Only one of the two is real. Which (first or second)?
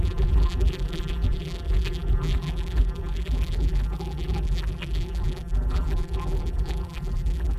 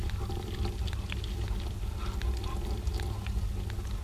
second